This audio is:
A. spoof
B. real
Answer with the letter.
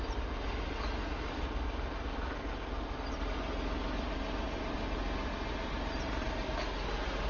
B